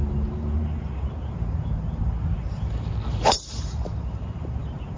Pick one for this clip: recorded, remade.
remade